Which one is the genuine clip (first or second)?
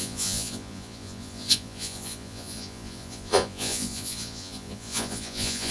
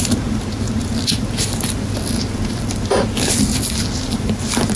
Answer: second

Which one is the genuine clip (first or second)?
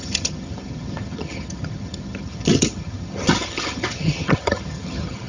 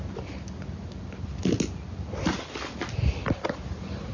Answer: second